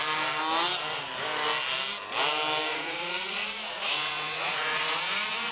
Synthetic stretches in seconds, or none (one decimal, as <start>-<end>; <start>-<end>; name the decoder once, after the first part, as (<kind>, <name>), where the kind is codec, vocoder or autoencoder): 2.7-5.5 (vocoder, Vocos)